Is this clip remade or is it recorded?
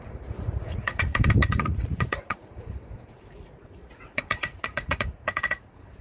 remade